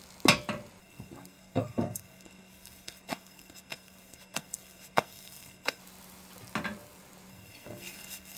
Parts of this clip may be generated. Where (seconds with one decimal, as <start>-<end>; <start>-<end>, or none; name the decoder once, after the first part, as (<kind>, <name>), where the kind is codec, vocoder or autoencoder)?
0.8-5.8 (codec, SNAC); 7.3-8.4